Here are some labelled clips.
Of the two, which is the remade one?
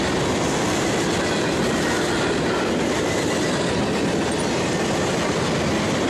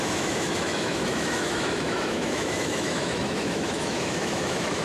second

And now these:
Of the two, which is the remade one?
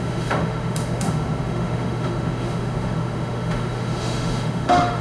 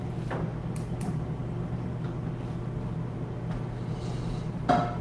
first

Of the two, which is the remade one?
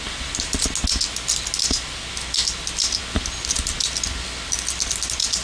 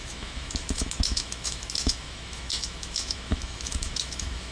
second